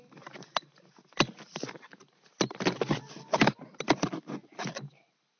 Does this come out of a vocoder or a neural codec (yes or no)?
no